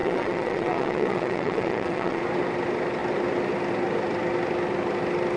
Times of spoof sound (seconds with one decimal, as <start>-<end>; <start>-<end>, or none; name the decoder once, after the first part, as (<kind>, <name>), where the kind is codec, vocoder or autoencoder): 0.0-2.2 (vocoder, WaveNeXt)